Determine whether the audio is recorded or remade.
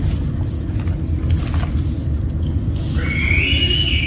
recorded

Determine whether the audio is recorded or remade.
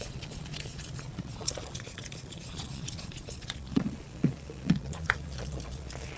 remade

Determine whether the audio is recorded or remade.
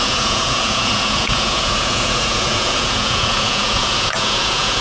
remade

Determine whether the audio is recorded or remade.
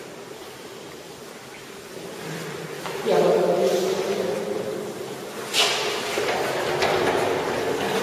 recorded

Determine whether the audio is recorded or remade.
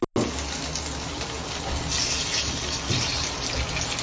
recorded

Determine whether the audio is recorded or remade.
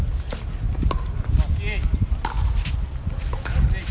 recorded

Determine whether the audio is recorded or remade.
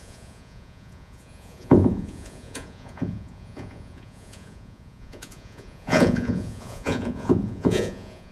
remade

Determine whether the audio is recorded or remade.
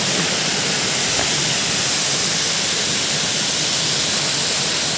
recorded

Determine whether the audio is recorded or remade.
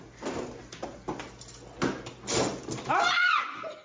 recorded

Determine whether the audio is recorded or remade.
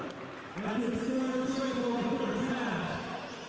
recorded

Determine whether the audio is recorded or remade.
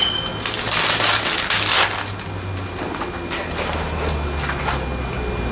recorded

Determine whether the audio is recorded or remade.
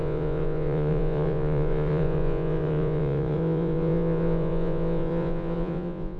remade